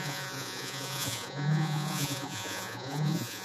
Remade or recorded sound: remade